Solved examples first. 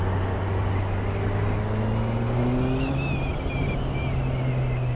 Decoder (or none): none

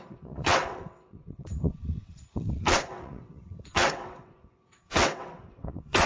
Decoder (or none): vocoder, WaveNeXt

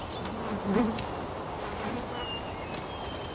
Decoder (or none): none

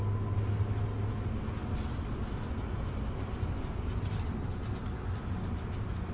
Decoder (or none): none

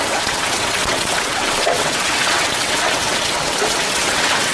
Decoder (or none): vocoder, WaveNeXt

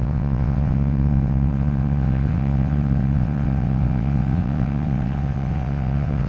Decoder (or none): vocoder, WaveNeXt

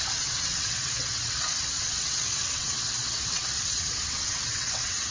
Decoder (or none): vocoder, WaveNeXt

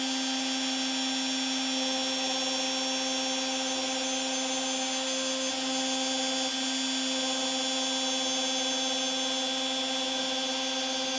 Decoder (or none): none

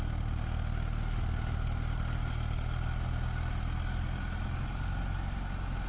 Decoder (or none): none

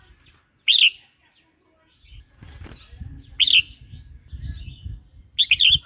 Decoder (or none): none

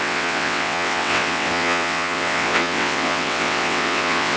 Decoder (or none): vocoder, WaveNeXt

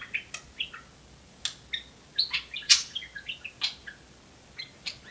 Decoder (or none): none